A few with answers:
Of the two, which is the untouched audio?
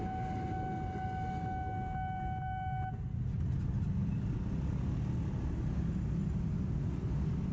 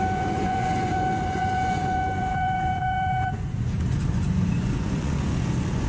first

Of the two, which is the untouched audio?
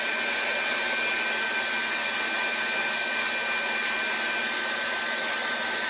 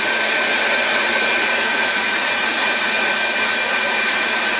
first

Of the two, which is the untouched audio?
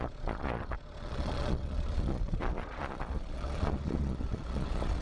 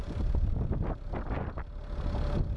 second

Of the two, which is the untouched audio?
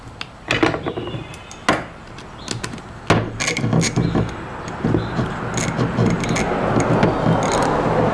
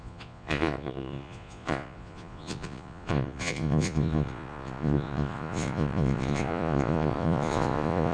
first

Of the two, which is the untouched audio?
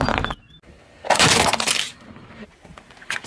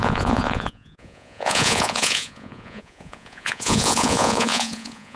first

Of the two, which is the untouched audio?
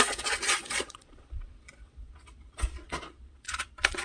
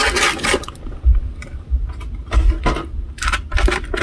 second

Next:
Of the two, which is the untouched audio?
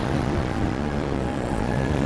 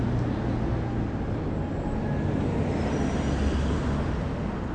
second